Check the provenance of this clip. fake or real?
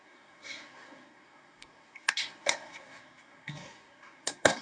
fake